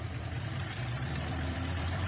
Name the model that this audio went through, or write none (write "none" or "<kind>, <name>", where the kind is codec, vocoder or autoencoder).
vocoder, BigVGAN v2